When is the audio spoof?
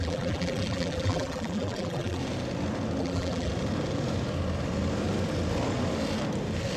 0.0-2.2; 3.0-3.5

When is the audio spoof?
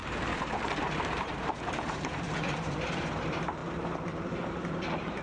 0.0-3.0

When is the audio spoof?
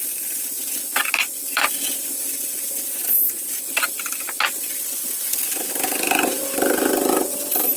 5.3-6.4